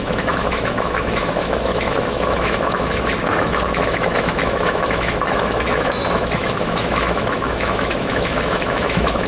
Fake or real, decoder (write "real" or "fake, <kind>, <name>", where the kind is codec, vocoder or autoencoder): fake, autoencoder, DAC-VAE